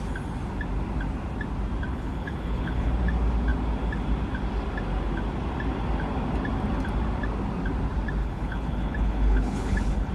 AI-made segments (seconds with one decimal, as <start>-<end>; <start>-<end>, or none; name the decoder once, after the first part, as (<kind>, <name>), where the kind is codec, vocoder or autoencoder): 1.9-2.9 (codec, HILCodec); 8.2-10.1